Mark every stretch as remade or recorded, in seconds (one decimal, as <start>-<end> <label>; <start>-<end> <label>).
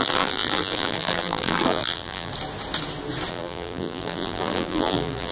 0.0-2.3 remade; 2.3-3.3 recorded; 3.3-5.3 remade